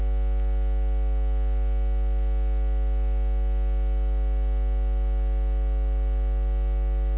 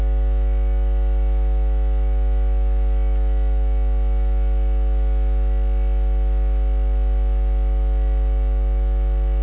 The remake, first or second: second